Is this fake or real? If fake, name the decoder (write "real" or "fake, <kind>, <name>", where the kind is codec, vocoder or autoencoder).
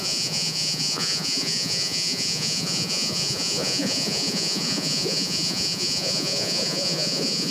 fake, vocoder, Vocos